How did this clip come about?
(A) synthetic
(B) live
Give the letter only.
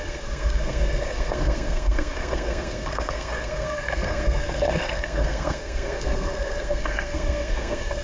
A